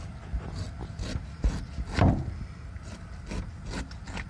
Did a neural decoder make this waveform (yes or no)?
no